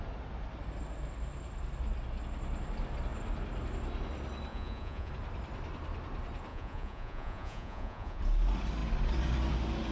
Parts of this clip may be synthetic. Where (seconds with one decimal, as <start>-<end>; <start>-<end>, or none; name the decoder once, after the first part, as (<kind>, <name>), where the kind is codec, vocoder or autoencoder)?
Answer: 4.5-5.1 (vocoder, Vocos); 6.5-8.2